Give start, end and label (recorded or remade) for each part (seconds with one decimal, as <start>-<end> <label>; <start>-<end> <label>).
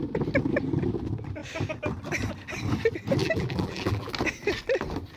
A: 0.0-3.2 recorded; 3.2-4.1 remade; 4.1-5.2 recorded